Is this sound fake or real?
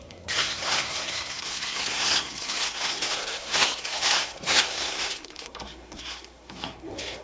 fake